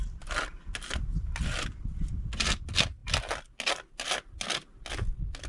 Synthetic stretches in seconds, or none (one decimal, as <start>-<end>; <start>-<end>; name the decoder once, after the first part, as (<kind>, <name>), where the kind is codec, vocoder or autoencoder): none